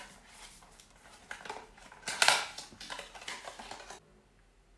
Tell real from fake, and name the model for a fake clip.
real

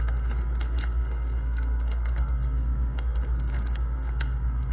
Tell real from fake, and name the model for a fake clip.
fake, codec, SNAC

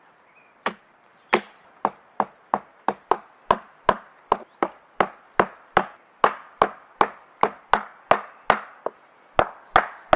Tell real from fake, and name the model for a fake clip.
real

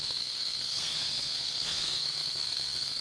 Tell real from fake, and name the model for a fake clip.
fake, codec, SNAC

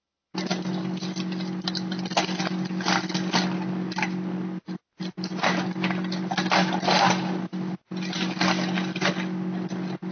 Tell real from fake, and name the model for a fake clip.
real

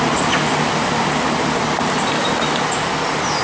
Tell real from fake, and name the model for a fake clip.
real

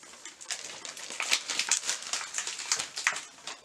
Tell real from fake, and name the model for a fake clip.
real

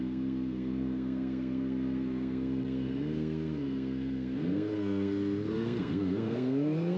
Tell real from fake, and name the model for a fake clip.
fake, codec, SNAC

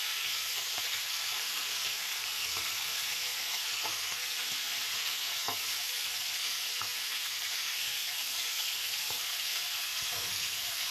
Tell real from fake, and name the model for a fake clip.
fake, codec, SNAC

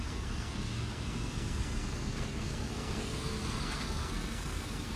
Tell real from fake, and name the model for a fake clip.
fake, codec, SNAC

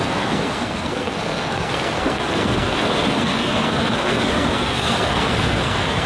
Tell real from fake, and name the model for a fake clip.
fake, codec, SNAC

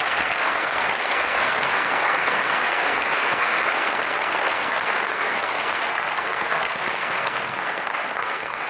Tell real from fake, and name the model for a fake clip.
fake, codec, SNAC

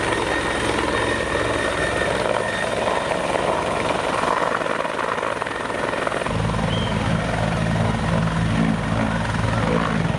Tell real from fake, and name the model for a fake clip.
real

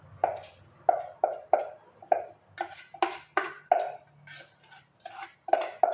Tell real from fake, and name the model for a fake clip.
real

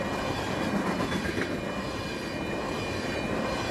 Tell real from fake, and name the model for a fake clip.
real